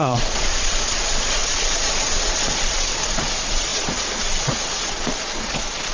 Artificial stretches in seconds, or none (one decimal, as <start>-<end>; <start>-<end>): 0.0-5.9